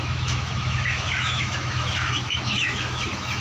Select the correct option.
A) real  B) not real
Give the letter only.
B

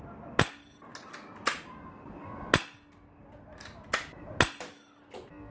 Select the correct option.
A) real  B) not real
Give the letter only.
A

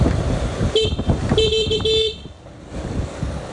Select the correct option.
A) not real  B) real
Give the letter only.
B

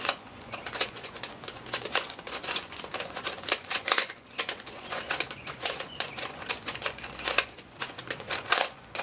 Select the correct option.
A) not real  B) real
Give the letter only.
A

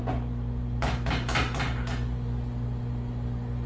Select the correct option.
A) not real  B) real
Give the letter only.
B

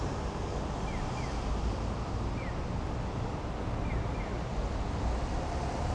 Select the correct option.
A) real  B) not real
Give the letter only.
A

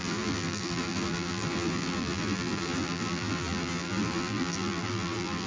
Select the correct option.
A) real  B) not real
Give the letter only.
B